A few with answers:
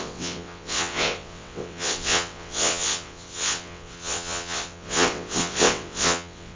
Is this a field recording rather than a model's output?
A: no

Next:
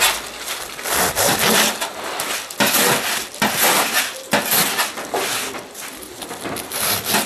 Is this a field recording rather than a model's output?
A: yes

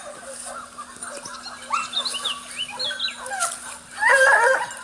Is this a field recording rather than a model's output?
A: yes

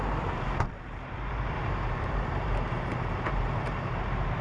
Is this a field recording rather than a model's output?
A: no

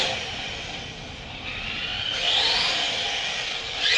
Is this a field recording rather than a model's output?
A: yes